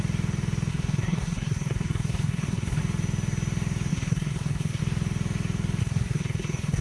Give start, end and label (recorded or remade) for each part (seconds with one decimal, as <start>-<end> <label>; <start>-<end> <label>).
0.0-0.7 recorded; 0.7-2.8 remade; 2.8-3.9 recorded; 3.9-4.8 remade; 4.8-5.8 recorded; 5.8-6.8 remade

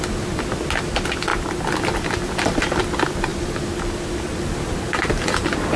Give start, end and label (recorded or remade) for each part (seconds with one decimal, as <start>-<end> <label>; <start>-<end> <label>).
0.0-5.8 recorded

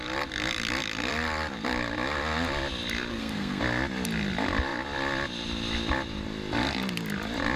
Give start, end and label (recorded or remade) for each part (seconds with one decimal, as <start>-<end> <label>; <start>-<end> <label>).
0.0-3.1 recorded; 3.1-3.6 remade; 3.6-7.6 recorded

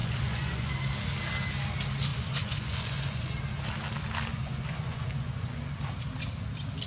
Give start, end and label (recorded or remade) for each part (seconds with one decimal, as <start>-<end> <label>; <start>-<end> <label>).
0.0-0.7 remade; 0.7-2.1 recorded; 2.1-3.4 remade; 3.4-4.3 recorded; 4.3-5.8 remade; 5.8-6.9 recorded

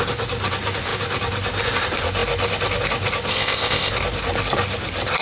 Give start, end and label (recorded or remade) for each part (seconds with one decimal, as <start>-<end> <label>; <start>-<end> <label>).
0.0-3.3 recorded; 3.3-3.9 remade; 3.9-5.2 recorded

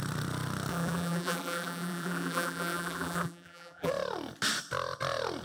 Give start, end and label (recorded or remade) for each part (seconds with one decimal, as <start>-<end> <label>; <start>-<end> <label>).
0.0-0.7 recorded; 0.7-3.9 remade; 3.9-5.4 recorded

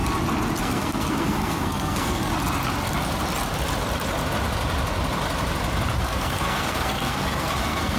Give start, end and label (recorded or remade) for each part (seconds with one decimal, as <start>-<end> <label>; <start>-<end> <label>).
0.0-0.6 recorded; 0.6-2.3 remade; 2.3-6.0 recorded; 6.0-8.0 remade